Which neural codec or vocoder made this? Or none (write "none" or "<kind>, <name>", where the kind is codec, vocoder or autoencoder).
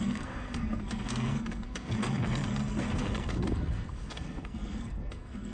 codec, SNAC